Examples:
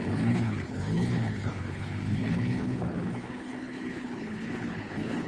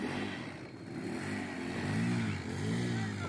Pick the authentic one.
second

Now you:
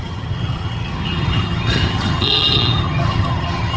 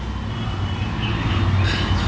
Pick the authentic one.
second